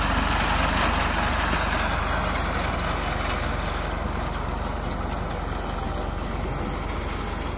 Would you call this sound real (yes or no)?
yes